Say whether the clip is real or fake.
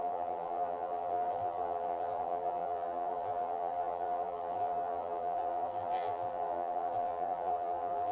fake